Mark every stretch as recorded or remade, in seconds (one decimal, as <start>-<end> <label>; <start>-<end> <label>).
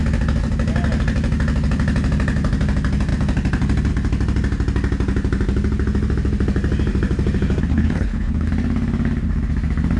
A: 0.0-7.7 recorded; 7.7-8.5 remade; 8.5-10.0 recorded